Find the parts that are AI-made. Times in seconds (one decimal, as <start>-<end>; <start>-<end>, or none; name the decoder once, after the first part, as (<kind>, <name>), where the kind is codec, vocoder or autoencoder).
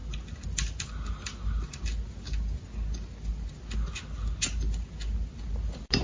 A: none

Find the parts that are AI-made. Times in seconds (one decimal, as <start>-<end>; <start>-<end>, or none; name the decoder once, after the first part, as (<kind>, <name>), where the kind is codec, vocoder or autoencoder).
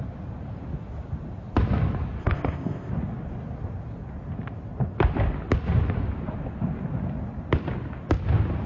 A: 2.2-2.9 (codec, ZipCodec)